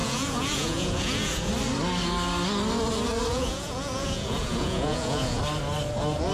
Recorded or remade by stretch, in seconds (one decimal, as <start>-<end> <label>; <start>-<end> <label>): 0.0-1.5 remade; 1.5-3.3 recorded; 3.3-5.4 remade; 5.4-6.3 recorded